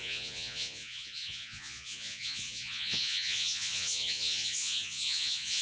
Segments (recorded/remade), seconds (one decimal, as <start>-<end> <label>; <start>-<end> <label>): 0.0-5.6 remade